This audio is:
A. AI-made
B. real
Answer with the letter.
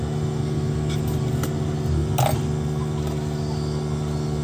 B